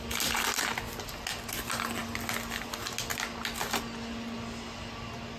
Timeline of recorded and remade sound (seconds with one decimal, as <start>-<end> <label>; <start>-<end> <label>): 0.0-5.4 recorded